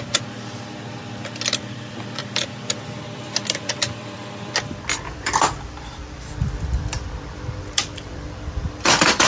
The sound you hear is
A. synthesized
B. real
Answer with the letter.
A